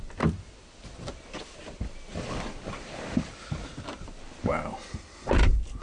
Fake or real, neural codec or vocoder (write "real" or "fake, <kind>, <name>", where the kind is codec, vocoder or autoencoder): real